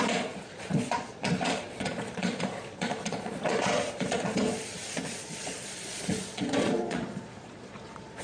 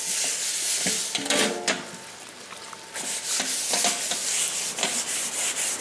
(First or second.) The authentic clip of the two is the second